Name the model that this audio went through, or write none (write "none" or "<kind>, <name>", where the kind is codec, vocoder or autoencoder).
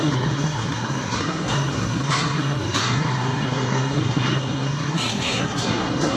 codec, SNAC